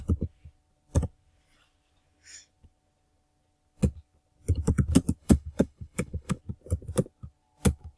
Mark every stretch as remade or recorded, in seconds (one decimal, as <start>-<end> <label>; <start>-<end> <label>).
0.0-5.2 recorded; 5.2-6.4 remade; 6.4-8.0 recorded